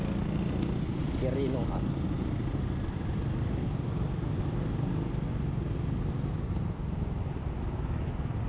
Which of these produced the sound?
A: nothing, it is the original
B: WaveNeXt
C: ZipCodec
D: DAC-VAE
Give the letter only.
A